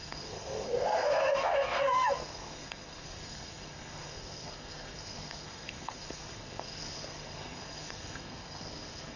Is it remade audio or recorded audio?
remade